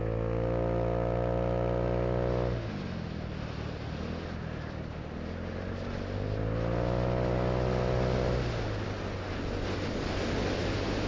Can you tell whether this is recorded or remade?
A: recorded